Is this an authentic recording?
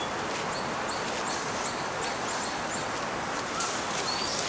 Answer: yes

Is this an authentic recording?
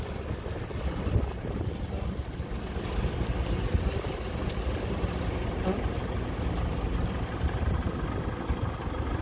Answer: yes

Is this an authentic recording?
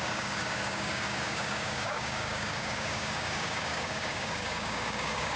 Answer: no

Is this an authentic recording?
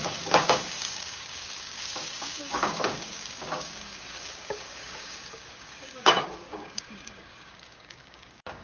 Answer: no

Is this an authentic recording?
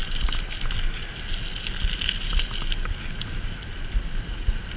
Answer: yes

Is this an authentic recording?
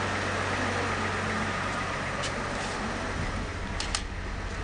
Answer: yes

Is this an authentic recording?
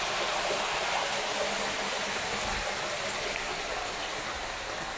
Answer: yes